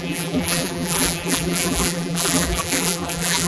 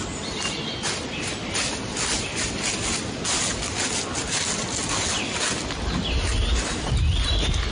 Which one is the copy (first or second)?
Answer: first